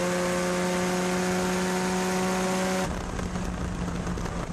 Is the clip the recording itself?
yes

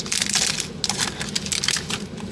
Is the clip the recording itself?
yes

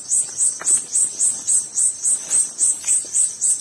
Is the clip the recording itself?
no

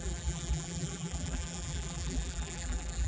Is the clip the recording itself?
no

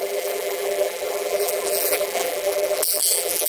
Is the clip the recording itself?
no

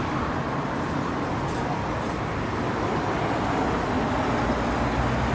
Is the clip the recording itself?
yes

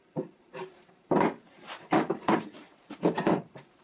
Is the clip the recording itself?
no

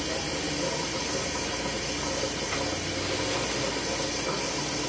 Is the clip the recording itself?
yes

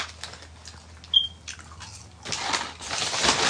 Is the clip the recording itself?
yes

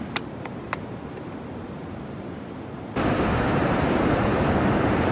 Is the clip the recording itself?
no